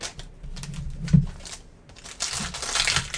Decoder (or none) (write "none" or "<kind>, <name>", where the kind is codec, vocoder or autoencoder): none